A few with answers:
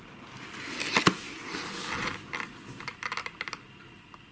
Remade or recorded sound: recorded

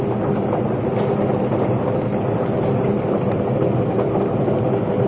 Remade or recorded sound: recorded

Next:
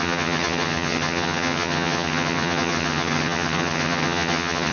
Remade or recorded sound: remade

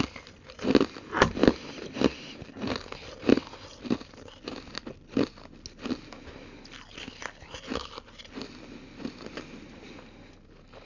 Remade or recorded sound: recorded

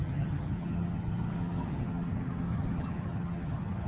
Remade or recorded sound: remade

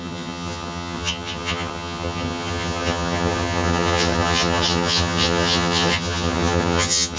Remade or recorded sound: remade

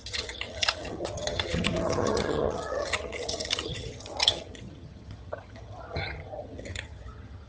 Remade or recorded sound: remade